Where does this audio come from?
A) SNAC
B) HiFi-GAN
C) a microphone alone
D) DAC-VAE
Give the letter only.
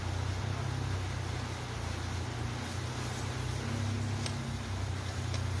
C